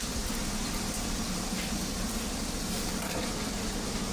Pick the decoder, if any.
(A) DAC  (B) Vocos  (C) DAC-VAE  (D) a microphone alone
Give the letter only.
D